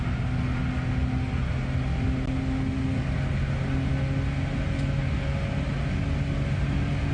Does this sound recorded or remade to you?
recorded